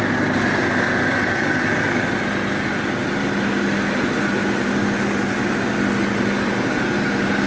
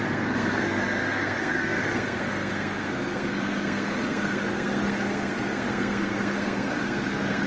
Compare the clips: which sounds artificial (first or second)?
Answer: second